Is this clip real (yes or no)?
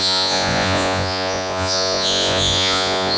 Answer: no